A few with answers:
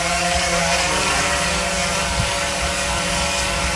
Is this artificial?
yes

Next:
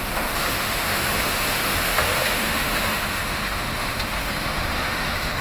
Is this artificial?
yes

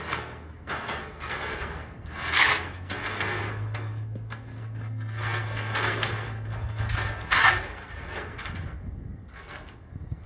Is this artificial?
yes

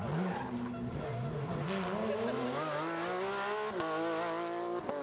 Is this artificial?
no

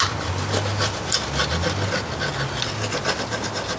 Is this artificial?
no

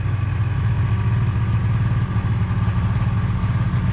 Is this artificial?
no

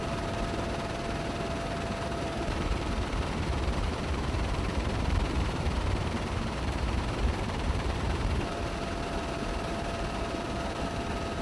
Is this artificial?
yes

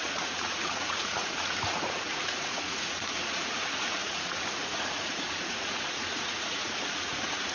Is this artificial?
yes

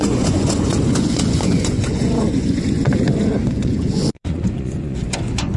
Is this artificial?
yes